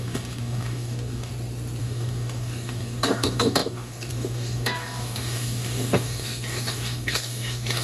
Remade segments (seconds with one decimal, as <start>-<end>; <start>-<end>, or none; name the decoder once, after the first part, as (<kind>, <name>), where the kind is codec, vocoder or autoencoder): 0.0-1.3 (codec, DAC); 1.8-7.8